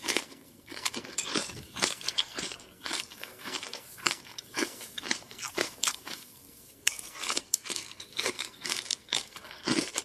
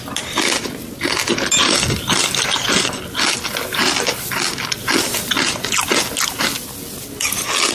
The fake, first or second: first